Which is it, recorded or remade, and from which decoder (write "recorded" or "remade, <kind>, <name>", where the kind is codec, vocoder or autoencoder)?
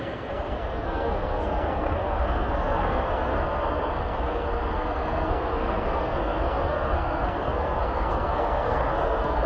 remade, codec, SNAC